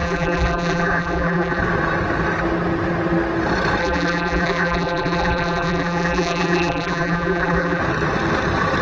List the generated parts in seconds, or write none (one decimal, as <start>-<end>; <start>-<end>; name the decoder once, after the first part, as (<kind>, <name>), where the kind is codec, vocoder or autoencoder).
0.0-1.6 (vocoder, BigVGAN v2); 3.8-7.8

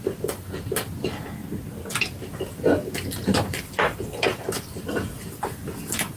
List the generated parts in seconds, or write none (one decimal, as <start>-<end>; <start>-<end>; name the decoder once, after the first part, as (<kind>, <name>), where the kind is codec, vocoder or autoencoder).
3.3-5.1 (vocoder, BigVGAN v2)

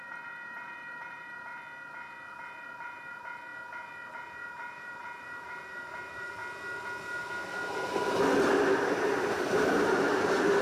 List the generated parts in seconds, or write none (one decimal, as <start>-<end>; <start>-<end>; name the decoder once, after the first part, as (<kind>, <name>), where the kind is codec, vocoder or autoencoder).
0.0-1.5 (vocoder, BigVGAN v2); 2.6-3.5; 4.1-6.4; 9.4-10.6

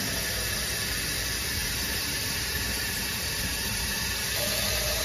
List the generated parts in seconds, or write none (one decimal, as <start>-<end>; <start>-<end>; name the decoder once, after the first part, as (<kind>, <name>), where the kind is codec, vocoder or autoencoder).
1.6-4.2 (vocoder, BigVGAN v2)

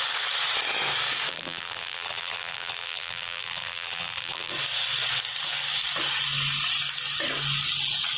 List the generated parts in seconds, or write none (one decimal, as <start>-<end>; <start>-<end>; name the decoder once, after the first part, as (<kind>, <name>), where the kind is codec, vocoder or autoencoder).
1.3-4.5 (vocoder, BigVGAN v2)

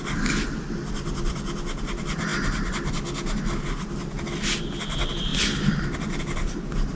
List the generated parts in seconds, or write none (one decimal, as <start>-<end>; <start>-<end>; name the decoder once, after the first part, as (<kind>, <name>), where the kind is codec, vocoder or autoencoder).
none

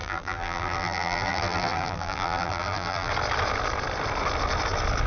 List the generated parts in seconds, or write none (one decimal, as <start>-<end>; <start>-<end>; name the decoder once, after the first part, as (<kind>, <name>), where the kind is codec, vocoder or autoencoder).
0.0-3.1 (vocoder, BigVGAN v2)